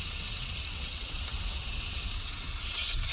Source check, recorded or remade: remade